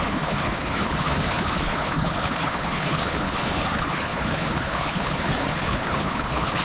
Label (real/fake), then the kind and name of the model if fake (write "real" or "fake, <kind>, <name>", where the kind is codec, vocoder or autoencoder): fake, codec, HILCodec